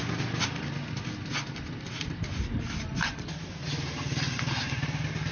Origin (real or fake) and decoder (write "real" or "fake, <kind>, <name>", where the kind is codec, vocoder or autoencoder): real